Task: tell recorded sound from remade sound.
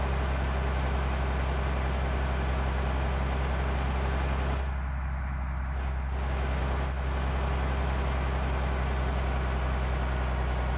recorded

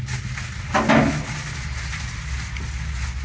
recorded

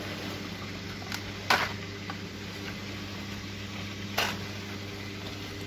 recorded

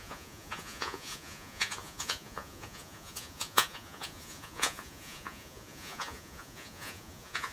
remade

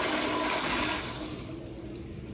recorded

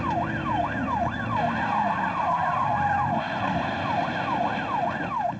recorded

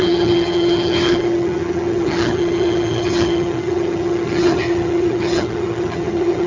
remade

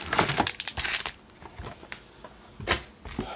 recorded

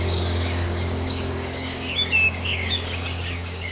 remade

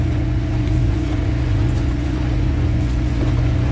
remade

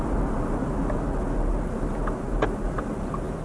recorded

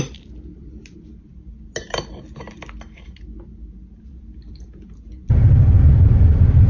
recorded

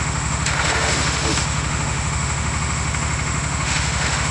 remade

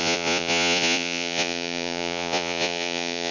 remade